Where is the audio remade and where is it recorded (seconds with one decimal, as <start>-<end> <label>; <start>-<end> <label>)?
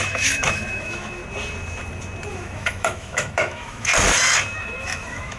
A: 0.0-1.2 remade; 1.2-2.3 recorded; 2.3-3.9 remade; 3.9-4.6 recorded; 4.6-5.4 remade